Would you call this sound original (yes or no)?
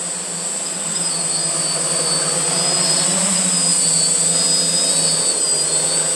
yes